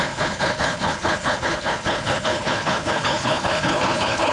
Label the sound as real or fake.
fake